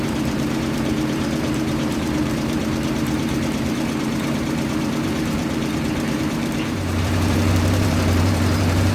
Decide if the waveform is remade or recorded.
remade